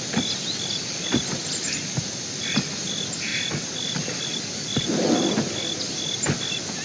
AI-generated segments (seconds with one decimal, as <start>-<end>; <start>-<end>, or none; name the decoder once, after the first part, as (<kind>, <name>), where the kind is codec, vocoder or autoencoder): none